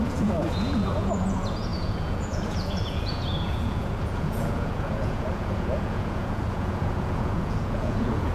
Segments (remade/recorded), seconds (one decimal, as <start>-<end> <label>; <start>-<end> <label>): 0.0-8.3 remade